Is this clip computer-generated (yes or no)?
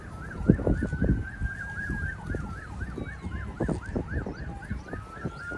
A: no